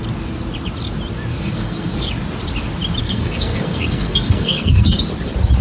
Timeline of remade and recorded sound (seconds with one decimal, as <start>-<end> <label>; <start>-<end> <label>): 0.0-1.3 recorded; 1.3-2.1 remade; 2.1-3.0 recorded; 3.0-5.0 remade; 5.0-5.6 recorded